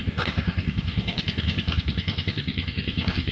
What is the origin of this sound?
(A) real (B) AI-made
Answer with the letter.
B